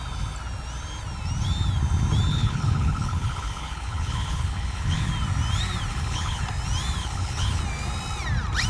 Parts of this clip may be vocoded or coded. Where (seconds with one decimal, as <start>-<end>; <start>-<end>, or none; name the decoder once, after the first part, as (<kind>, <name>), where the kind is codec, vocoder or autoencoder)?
2.3-5.1 (codec, HILCodec); 5.9-6.4; 7.0-7.6